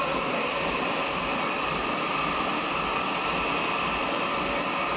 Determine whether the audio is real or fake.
fake